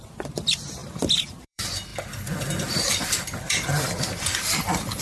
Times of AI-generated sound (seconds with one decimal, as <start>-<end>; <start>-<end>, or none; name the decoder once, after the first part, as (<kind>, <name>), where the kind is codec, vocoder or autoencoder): 0.0-5.0 (vocoder, BigVGAN v2)